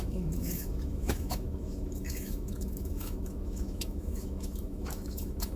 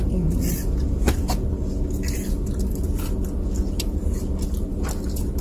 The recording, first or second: second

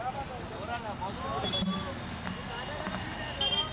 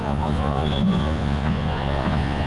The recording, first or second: first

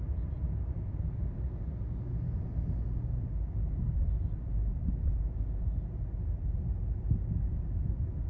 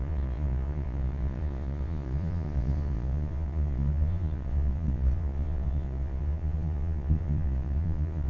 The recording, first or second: first